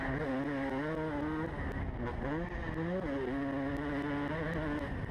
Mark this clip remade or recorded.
recorded